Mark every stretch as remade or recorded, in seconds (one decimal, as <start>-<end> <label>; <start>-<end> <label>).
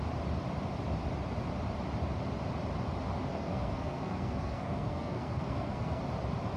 0.0-3.3 recorded; 3.3-6.0 remade; 6.0-6.6 recorded